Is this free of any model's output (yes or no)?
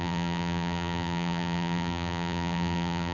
no